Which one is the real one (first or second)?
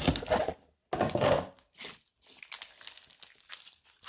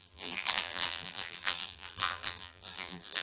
first